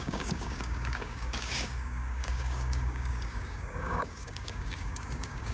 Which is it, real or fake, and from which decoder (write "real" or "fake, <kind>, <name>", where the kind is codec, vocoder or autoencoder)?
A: fake, codec, DAC